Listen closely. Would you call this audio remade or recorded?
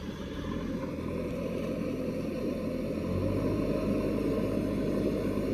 recorded